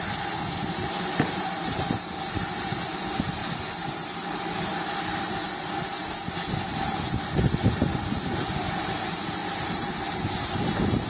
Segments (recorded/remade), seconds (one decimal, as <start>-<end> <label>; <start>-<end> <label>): 0.0-11.1 recorded